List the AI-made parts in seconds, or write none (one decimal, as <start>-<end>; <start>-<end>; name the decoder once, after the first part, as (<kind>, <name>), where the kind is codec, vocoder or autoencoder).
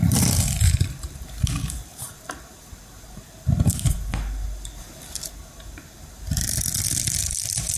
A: 0.0-1.9 (vocoder, BigVGAN v2); 6.1-7.8